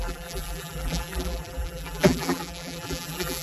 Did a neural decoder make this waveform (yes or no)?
yes